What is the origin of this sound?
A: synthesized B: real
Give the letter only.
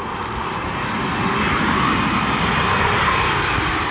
B